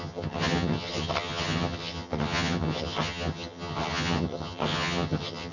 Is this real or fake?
fake